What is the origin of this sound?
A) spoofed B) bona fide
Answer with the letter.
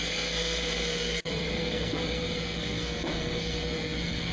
A